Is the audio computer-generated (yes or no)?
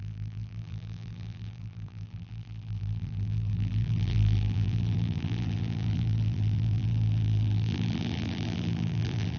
yes